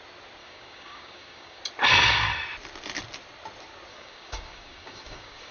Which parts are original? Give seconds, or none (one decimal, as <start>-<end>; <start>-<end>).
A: 0.0-0.4; 1.6-3.9